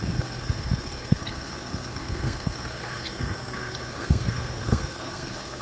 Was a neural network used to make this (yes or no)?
yes